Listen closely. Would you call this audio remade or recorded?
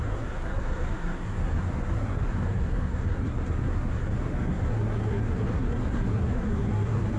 remade